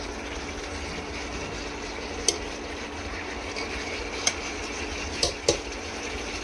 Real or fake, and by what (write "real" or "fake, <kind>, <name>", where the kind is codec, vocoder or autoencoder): real